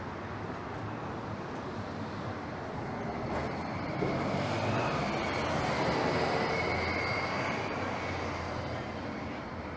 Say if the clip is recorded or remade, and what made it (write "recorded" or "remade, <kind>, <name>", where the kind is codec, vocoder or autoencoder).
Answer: recorded